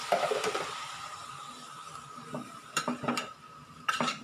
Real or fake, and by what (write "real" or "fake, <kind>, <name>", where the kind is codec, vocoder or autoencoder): fake, vocoder, BigVGAN v2